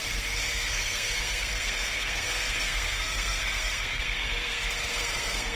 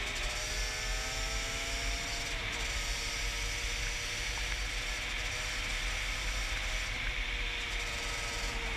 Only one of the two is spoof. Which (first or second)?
first